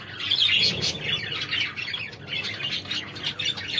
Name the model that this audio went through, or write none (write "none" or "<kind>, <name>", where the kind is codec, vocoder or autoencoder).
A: none